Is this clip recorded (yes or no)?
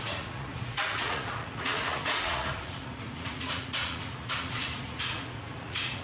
no